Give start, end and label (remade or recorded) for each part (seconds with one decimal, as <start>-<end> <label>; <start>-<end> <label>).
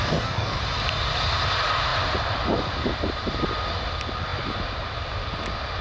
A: 0.0-0.6 remade; 0.6-5.8 recorded